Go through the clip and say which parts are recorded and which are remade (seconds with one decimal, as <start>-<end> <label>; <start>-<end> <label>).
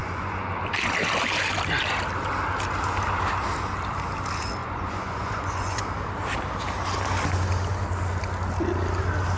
0.0-0.6 remade; 0.6-4.6 recorded; 4.6-5.9 remade; 5.9-9.4 recorded